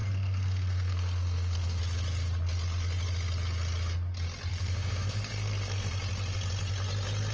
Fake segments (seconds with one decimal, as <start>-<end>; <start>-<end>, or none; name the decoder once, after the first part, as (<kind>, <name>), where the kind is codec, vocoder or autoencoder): 0.0-1.8 (codec, SNAC); 4.5-5.9